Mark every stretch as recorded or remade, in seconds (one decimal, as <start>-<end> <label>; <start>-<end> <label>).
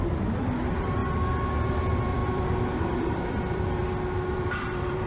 0.0-1.0 remade; 1.0-1.6 recorded; 1.6-2.2 remade; 2.2-2.8 recorded; 2.8-3.8 remade; 3.8-4.3 recorded; 4.3-5.1 remade